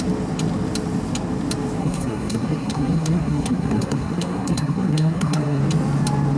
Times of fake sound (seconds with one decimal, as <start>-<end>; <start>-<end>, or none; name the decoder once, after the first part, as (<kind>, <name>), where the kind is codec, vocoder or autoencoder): 1.8-5.6 (codec, SNAC)